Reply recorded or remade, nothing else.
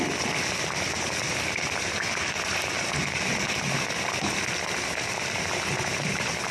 recorded